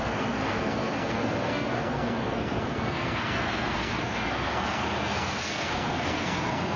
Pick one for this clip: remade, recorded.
remade